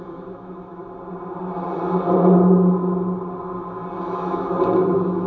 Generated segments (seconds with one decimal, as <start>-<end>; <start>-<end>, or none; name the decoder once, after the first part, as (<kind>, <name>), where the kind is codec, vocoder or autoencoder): 0.0-0.8 (autoencoder, DAC-VAE); 4.0-5.3